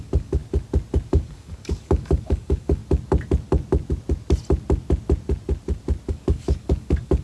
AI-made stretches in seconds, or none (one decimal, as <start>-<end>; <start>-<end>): 0.0-0.4; 1.1-2.8; 6.1-7.2